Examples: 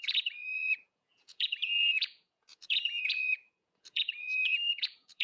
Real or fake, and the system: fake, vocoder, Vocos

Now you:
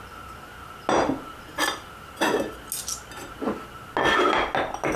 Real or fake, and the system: real